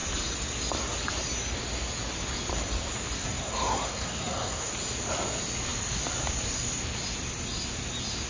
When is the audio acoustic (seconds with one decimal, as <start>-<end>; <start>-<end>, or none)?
0.0-3.2; 4.7-8.3